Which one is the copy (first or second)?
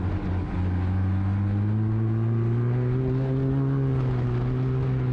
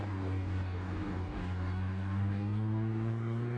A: second